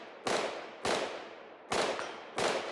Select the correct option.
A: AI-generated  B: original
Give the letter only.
B